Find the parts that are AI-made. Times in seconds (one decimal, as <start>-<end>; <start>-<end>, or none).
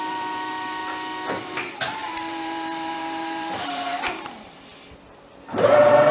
0.0-0.8; 1.4-3.9; 5.6-6.1